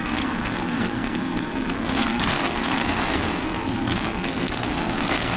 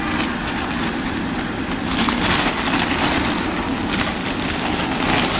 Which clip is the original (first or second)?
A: second